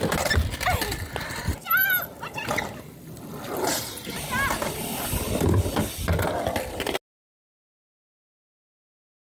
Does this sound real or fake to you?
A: real